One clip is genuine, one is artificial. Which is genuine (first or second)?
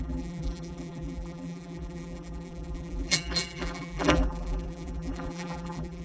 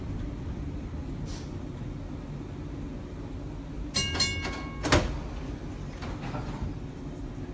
second